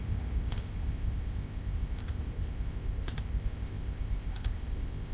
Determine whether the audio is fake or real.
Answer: fake